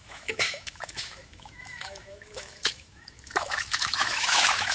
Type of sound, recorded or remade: remade